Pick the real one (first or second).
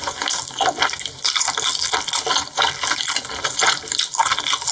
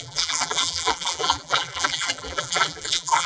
first